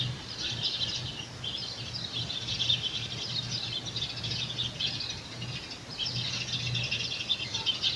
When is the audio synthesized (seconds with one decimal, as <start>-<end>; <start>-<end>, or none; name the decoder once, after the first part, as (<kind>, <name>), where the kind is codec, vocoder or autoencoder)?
none